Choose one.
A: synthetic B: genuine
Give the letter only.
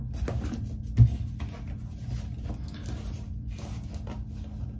B